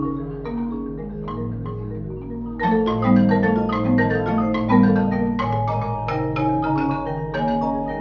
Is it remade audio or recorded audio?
recorded